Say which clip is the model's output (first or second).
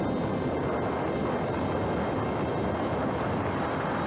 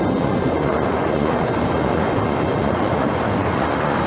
second